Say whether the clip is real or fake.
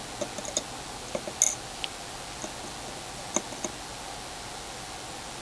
real